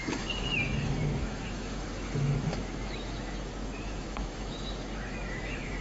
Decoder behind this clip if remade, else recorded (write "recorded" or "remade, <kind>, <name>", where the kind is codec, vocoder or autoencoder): remade, autoencoder, DAC-VAE